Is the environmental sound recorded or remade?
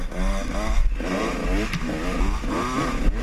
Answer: recorded